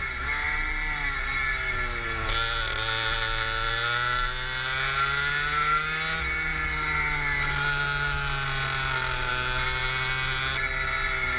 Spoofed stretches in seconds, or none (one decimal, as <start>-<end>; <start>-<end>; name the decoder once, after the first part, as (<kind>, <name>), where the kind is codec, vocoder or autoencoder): none